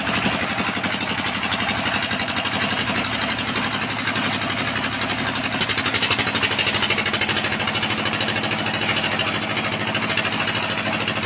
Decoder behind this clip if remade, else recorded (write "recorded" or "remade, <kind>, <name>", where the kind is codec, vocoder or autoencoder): recorded